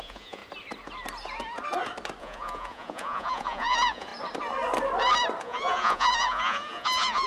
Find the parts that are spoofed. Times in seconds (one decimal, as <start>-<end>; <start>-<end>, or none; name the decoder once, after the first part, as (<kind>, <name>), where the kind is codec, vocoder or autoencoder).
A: 0.0-0.4 (vocoder, Vocos); 2.2-4.1; 5.4-7.3